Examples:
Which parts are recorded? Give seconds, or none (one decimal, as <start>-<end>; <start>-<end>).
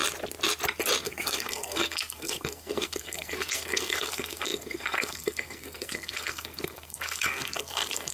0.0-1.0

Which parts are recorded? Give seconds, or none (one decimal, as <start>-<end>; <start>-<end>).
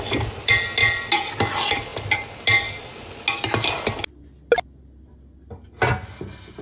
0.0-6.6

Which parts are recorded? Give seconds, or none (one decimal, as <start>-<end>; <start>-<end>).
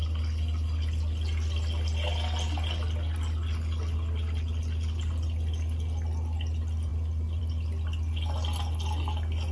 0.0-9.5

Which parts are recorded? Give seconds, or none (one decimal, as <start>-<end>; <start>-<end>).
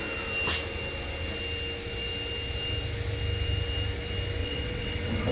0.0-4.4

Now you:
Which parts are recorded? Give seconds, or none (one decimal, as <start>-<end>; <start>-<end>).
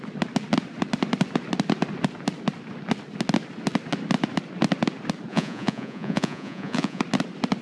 0.0-5.3; 7.0-7.6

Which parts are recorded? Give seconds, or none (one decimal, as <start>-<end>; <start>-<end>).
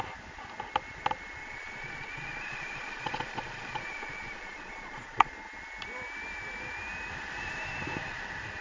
0.0-1.4; 5.3-8.6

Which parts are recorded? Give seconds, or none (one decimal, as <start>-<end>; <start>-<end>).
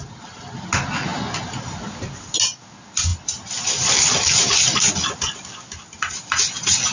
0.0-6.9